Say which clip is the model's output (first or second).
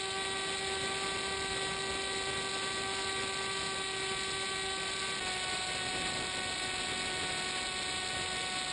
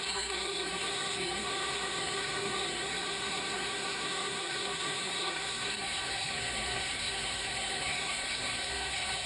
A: second